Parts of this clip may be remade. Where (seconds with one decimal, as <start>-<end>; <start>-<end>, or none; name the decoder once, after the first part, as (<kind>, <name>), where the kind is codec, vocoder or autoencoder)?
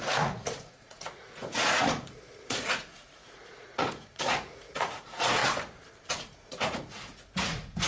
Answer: 0.0-5.4 (vocoder, Vocos); 6.1-7.9